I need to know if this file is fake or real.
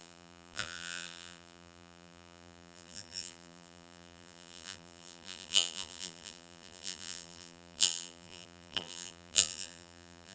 fake